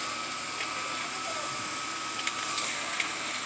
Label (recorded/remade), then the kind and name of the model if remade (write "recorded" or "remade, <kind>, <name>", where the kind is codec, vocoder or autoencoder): recorded